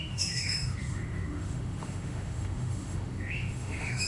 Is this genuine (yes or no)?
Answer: no